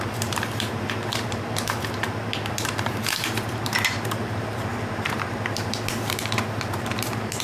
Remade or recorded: remade